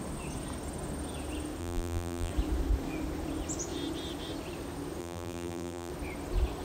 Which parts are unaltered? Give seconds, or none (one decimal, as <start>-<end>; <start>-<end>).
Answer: 0.0-1.6; 2.3-5.0; 5.9-6.6